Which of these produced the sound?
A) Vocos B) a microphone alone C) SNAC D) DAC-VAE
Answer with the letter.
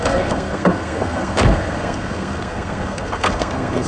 C